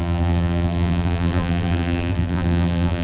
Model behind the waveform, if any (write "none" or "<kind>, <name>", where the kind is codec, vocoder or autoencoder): vocoder, BigVGAN v2